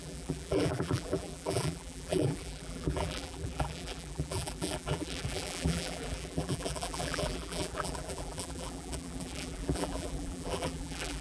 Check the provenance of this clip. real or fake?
fake